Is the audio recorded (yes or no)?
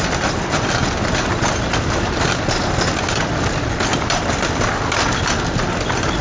yes